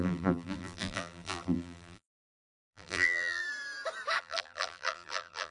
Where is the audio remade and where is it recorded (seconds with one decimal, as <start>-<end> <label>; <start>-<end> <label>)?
0.0-3.4 remade; 3.4-4.2 recorded; 4.2-5.5 remade